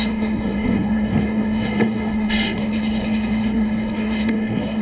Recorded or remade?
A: remade